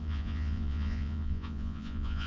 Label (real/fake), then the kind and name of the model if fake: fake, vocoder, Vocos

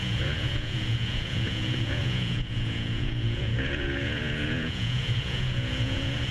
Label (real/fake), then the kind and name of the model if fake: fake, vocoder, Vocos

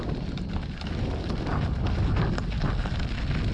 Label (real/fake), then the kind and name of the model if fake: real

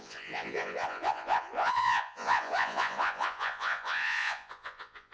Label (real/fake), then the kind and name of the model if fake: fake, vocoder, Vocos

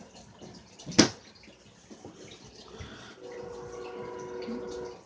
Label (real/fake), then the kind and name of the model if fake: real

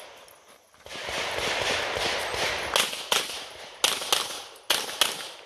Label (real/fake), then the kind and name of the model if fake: real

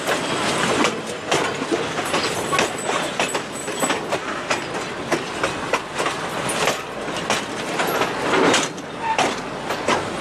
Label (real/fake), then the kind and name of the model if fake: real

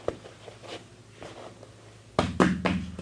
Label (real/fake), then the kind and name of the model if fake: real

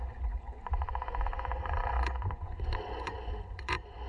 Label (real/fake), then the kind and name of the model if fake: fake, vocoder, Vocos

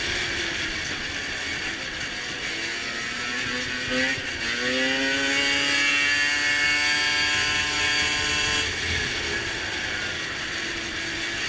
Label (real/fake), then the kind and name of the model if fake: real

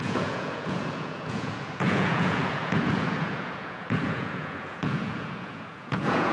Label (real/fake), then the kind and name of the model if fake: fake, vocoder, Vocos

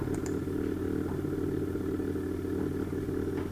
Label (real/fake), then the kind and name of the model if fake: real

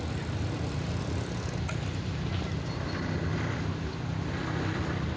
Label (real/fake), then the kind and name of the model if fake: real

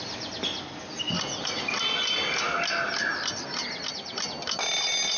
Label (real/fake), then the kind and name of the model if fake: real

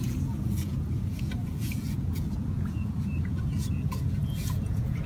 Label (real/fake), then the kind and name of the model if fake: fake, vocoder, Vocos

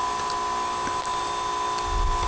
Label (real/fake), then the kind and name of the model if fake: real